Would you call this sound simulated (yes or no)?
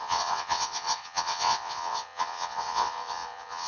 yes